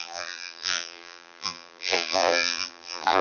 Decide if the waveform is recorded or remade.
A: remade